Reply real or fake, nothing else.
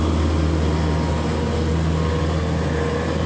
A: real